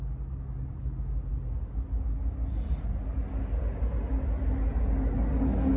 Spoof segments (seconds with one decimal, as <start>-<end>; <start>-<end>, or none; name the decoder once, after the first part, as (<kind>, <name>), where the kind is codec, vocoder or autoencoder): none